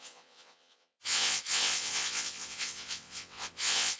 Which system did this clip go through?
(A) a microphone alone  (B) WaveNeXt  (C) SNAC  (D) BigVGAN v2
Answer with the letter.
B